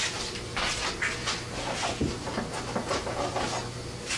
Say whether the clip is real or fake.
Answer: real